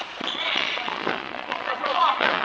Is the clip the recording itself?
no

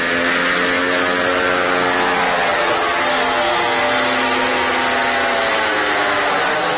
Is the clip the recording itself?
yes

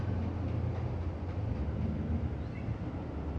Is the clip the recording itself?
yes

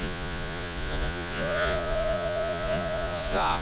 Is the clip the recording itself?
no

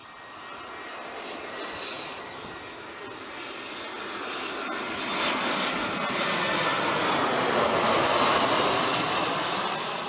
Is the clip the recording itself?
yes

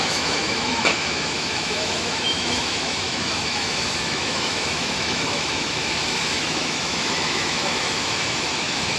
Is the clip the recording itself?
no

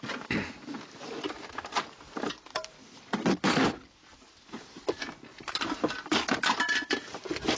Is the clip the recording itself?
yes